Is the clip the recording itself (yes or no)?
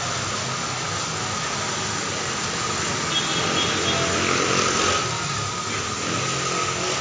yes